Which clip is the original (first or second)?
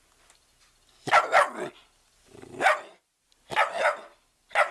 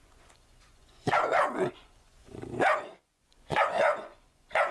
first